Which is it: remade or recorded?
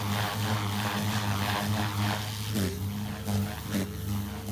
recorded